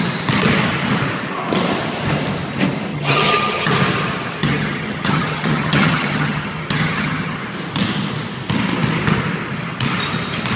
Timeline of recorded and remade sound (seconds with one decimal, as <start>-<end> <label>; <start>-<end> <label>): 0.0-2.9 recorded; 2.9-3.7 remade; 3.7-4.4 recorded; 4.4-7.4 remade; 7.4-10.6 recorded